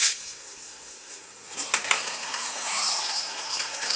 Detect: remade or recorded remade